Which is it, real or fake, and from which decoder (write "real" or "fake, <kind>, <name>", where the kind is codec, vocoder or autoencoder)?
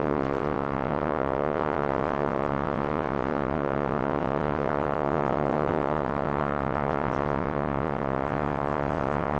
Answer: fake, vocoder, WaveNeXt